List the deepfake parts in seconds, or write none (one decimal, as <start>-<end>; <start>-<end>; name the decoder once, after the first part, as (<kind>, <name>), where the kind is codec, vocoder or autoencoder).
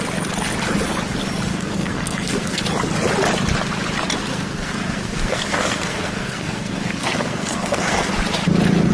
1.5-2.6 (codec, SNAC); 4.3-8.1